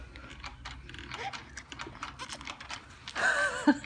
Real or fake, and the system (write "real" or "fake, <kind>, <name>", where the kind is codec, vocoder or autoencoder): real